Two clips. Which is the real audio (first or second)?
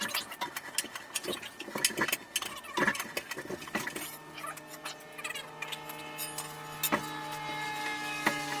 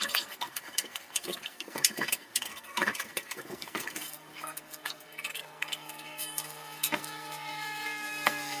first